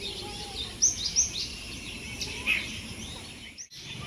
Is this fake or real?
real